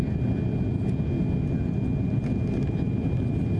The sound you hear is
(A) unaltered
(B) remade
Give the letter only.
A